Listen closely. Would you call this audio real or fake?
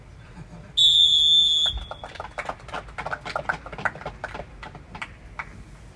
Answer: real